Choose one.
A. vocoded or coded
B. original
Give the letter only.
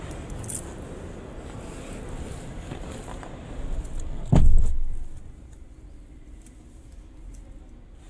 B